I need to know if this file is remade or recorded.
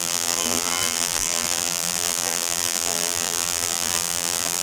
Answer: remade